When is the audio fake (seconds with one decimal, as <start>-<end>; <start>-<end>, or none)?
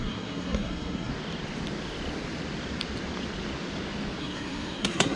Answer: 0.0-1.1; 4.2-5.2